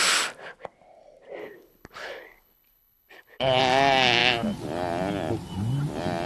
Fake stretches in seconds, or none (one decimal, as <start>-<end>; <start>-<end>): 1.4-3.6